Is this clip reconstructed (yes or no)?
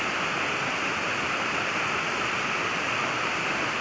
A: no